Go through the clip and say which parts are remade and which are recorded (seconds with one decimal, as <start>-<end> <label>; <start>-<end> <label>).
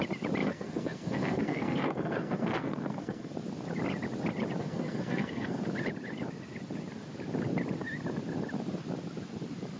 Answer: 0.0-0.4 recorded; 0.4-3.3 remade; 3.3-4.6 recorded; 4.6-5.6 remade; 5.6-9.8 recorded